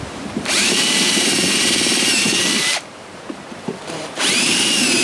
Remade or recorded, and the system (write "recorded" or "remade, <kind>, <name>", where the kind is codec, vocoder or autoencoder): remade, vocoder, BigVGAN v2